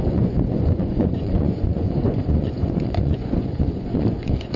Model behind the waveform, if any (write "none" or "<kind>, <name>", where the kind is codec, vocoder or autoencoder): vocoder, Vocos